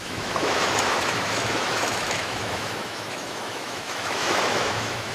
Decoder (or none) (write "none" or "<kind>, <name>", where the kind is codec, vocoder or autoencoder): autoencoder, DAC-VAE